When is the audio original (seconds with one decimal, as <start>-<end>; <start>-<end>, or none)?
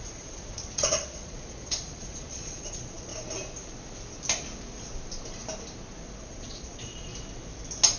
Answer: 3.1-6.2; 7.1-8.0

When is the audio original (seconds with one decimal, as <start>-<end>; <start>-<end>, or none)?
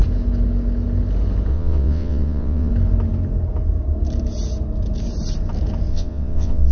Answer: 0.0-1.5; 2.7-5.9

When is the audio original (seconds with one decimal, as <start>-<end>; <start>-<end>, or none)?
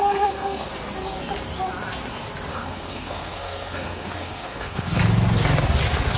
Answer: 0.7-2.5; 5.0-6.2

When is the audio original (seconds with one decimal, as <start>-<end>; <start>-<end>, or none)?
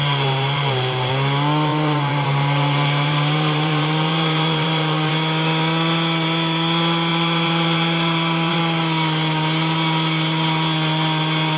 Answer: 1.1-1.7; 5.1-7.1; 8.6-11.6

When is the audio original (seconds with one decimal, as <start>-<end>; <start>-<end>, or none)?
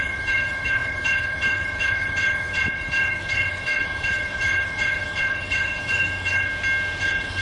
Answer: 6.5-7.0